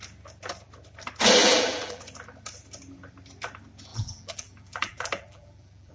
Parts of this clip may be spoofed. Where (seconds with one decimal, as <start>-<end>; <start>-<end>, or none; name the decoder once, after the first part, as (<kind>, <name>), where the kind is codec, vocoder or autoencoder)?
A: 1.4-2.0 (vocoder, BigVGAN v2); 3.9-5.9